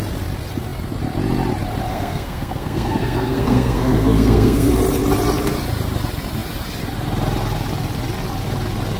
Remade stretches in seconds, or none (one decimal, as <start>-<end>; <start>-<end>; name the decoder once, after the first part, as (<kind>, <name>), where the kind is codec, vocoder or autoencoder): 1.9-4.7 (codec, SNAC)